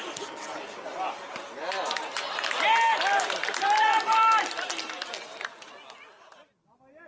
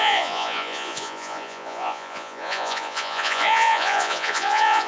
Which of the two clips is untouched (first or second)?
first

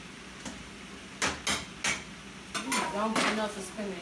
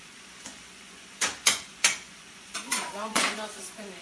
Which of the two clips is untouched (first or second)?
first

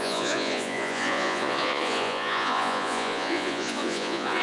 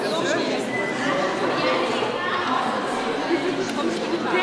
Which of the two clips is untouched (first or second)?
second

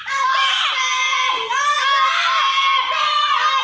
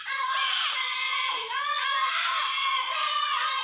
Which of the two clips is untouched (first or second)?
first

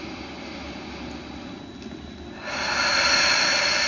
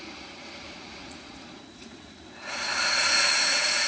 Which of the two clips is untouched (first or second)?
first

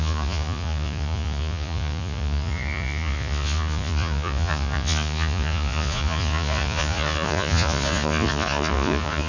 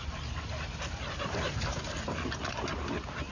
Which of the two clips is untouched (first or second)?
second